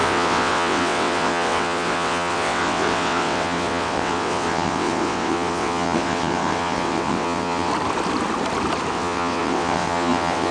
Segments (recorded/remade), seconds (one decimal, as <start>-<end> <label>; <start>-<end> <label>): 0.0-7.7 remade; 7.7-8.9 recorded; 8.9-10.5 remade